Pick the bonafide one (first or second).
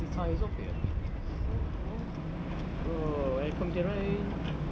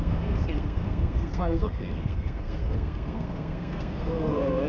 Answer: first